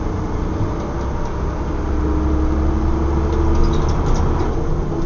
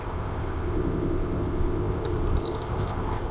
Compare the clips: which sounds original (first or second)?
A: first